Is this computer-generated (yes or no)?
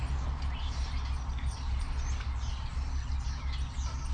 no